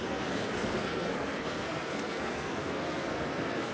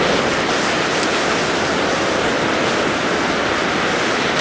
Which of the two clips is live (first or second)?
second